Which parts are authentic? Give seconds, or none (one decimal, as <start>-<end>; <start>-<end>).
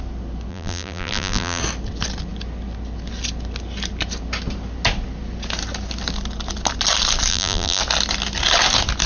0.0-0.5; 1.6-7.3; 7.8-9.1